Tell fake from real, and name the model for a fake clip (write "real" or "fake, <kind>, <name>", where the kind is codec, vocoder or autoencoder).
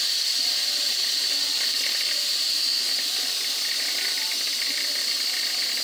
real